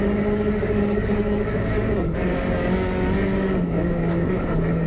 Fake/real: fake